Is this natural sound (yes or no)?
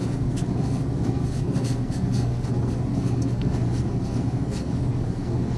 no